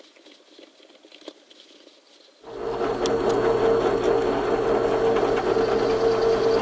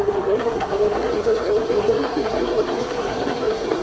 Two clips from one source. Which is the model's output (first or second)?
second